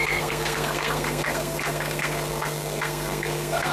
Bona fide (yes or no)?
no